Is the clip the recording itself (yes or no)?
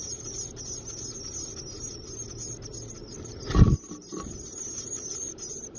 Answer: yes